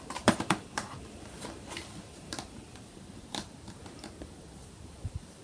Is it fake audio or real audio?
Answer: fake